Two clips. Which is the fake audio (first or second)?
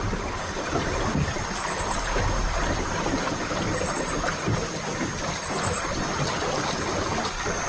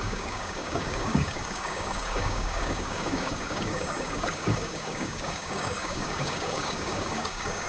second